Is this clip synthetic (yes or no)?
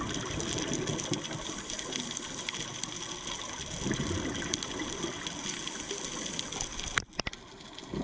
no